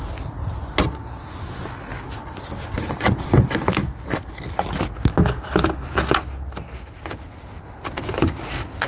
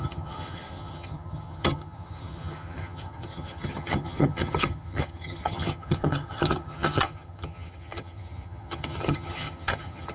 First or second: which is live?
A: first